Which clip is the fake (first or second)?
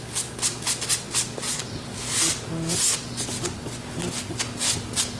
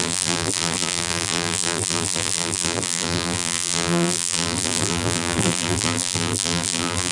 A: second